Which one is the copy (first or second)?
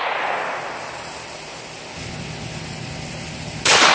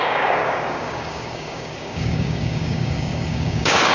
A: second